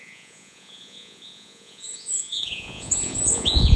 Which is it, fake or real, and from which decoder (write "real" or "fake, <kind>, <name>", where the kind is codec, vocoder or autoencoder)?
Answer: fake, vocoder, Vocos